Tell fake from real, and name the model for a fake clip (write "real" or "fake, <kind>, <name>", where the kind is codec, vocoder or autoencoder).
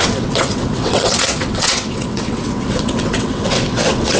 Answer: fake, vocoder, WaveNeXt